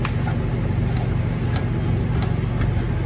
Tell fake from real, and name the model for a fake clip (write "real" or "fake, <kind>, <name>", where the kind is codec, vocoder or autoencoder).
real